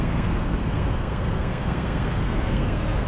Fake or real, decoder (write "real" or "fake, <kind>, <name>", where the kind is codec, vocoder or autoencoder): fake, codec, SNAC